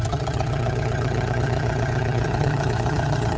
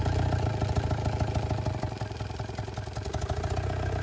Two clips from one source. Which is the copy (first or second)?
first